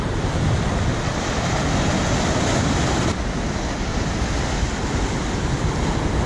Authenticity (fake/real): real